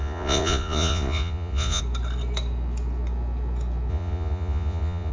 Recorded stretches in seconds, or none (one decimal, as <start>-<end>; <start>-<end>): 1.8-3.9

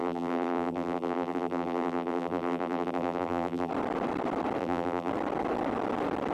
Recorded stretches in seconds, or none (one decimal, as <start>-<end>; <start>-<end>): 3.7-4.6; 5.1-6.3

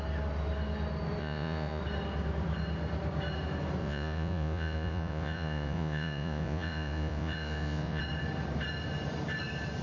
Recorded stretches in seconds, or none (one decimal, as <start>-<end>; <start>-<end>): 0.0-1.2; 1.8-3.8; 8.0-9.8

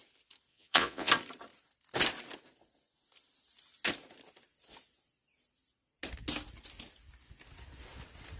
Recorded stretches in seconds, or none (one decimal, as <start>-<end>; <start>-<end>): 0.0-0.5; 1.1-8.4

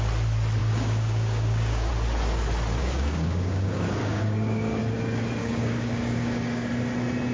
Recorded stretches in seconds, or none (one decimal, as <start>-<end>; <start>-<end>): 0.0-0.6; 1.9-2.8; 4.8-5.4; 6.7-7.3

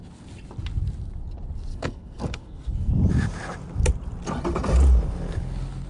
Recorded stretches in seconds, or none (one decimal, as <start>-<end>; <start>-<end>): 0.0-1.7; 2.9-5.9

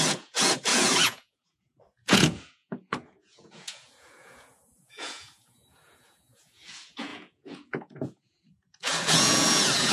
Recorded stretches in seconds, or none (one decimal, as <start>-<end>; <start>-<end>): none